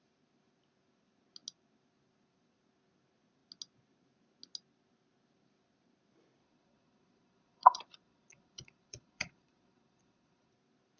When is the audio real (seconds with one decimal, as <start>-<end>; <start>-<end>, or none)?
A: 0.0-6.4; 10.5-11.0